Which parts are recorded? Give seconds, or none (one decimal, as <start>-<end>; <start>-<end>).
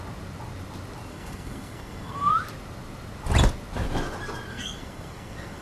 0.0-1.1; 2.3-4.5